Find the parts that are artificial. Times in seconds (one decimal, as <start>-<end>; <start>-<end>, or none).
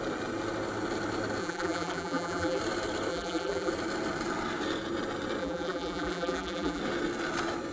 1.4-2.6; 3.1-3.7; 5.4-6.8